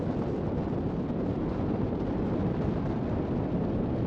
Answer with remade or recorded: recorded